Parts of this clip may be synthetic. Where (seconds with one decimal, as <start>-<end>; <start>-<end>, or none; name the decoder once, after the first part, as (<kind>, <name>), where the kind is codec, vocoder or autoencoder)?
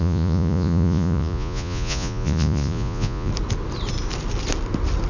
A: 0.0-3.3 (vocoder, Vocos)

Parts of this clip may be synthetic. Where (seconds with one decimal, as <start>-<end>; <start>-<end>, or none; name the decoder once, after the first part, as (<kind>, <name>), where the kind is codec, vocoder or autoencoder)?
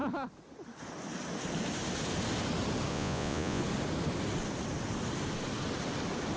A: 2.9-3.6 (vocoder, Vocos)